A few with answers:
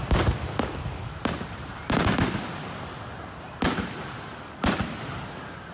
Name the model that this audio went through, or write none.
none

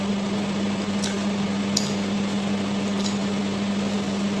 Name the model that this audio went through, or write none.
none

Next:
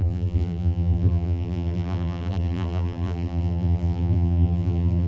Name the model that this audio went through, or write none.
vocoder, BigVGAN v2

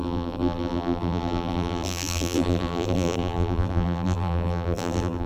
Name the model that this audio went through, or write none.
vocoder, BigVGAN v2